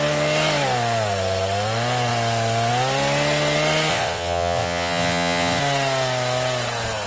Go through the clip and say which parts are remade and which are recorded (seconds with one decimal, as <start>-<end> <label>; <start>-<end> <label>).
0.0-3.9 recorded; 3.9-5.6 remade; 5.6-7.1 recorded